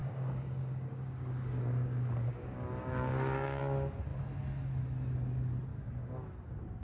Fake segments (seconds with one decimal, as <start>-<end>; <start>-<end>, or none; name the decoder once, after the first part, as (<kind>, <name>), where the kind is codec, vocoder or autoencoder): 0.0-3.6 (codec, DAC); 5.7-6.3